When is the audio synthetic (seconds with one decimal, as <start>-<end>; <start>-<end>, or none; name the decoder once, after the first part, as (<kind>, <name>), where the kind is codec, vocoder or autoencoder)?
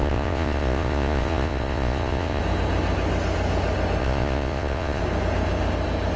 0.0-2.4 (vocoder, Vocos); 4.0-5.0